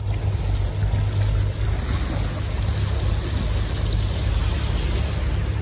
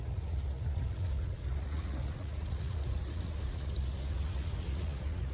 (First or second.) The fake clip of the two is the second